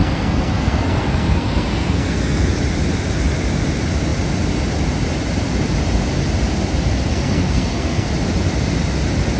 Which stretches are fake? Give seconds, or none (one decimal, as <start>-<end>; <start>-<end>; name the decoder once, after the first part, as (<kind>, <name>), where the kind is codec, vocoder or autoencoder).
0.0-2.6 (codec, SNAC); 7.1-8.1